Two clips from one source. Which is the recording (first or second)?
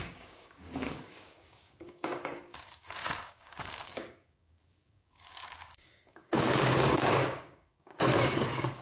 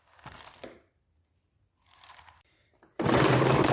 second